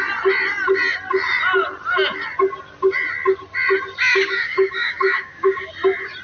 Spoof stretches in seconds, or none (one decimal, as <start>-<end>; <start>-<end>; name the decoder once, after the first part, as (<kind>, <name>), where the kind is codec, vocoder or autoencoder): 4.1-5.7 (codec, DAC)